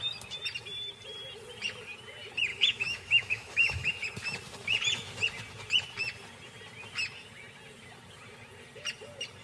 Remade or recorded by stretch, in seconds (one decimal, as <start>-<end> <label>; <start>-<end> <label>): 0.0-2.5 recorded; 2.5-3.9 remade; 3.9-9.4 recorded